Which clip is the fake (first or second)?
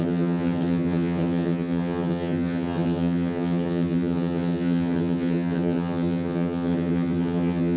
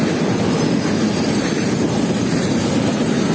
first